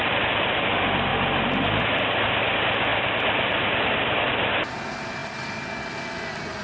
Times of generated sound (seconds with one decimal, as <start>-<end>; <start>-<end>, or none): none

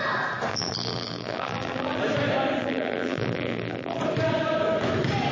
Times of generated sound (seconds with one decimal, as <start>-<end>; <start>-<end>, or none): 0.5-2.0; 2.6-4.0

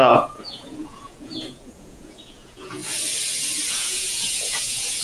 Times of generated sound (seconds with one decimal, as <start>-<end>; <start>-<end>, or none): 0.0-2.8; 3.7-5.0

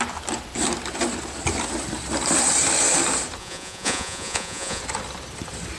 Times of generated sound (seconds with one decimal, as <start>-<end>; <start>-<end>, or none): 3.4-4.8

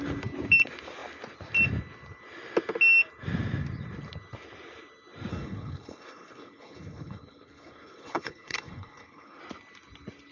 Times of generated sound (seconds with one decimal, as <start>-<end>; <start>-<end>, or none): 5.3-9.4

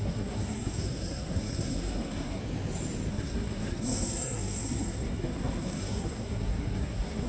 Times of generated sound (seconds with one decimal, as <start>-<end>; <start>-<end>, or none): 0.0-2.4; 3.1-7.3

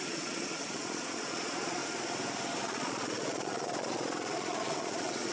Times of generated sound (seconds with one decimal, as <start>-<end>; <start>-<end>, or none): 0.0-1.8; 2.6-5.3

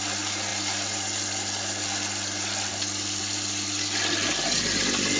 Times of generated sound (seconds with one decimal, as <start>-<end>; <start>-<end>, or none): none